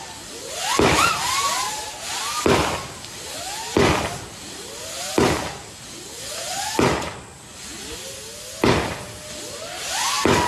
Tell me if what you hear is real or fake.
real